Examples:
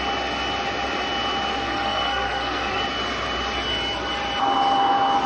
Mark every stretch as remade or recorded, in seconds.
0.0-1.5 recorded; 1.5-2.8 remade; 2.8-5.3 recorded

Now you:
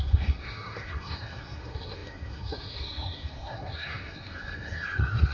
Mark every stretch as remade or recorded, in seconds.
0.0-5.3 remade

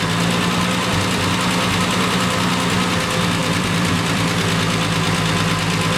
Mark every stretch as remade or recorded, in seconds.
0.0-3.4 recorded; 3.4-4.4 remade; 4.4-6.0 recorded